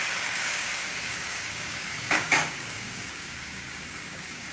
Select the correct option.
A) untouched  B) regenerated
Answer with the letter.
B